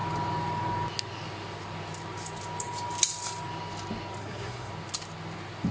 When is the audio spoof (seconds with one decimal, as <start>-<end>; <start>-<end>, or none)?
4.2-4.7